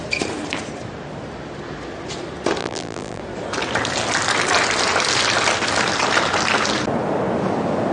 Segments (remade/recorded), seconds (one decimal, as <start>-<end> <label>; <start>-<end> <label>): 0.0-2.6 recorded; 2.6-3.2 remade; 3.2-7.9 recorded